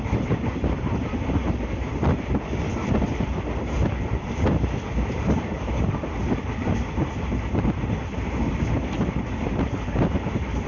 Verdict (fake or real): fake